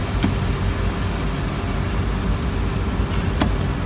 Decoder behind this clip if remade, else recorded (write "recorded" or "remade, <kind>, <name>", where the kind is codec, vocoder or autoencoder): recorded